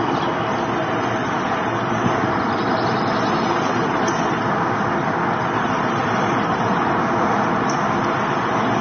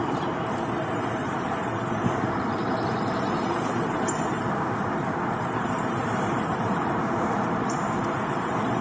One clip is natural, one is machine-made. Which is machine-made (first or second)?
second